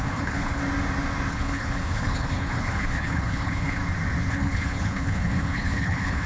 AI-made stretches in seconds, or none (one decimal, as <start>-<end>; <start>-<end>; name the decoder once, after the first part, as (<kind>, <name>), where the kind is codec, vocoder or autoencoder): 0.0-0.6 (codec, HILCodec); 1.3-3.8; 4.3-6.3